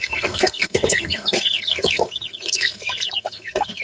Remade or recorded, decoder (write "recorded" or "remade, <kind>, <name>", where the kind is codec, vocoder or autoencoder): remade, codec, SNAC